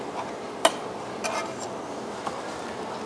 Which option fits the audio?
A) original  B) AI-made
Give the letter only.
A